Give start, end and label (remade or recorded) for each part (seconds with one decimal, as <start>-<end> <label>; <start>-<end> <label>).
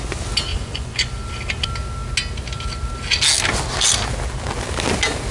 0.0-0.5 recorded; 0.5-1.1 remade; 1.1-5.3 recorded